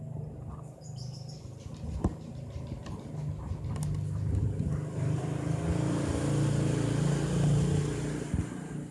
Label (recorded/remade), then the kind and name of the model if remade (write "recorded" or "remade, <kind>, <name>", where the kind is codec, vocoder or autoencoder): recorded